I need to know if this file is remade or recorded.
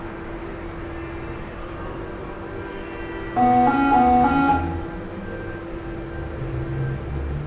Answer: recorded